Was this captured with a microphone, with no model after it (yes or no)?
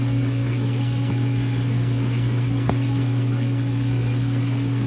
no